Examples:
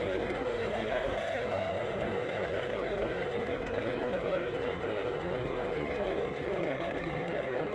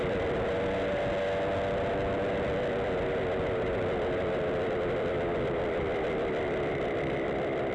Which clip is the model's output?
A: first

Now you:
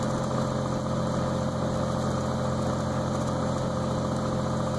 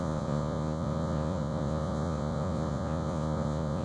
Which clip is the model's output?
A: second